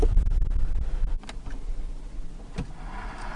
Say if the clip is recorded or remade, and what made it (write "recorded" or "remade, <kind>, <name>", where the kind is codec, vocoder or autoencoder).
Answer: recorded